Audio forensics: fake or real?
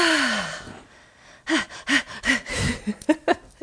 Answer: real